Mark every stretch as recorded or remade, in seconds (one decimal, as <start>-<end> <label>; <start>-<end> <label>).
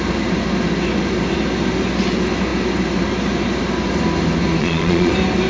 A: 0.0-4.6 recorded; 4.6-5.1 remade; 5.1-5.5 recorded